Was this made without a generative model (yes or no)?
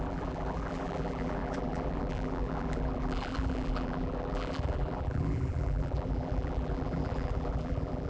no